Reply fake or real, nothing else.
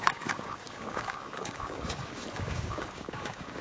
fake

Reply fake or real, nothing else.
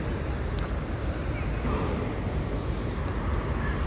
real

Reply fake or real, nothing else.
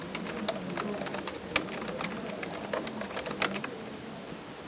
real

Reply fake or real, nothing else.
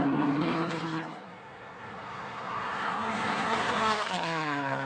fake